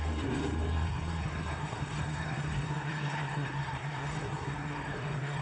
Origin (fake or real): fake